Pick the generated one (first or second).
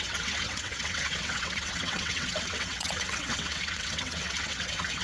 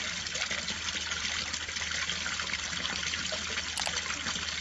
first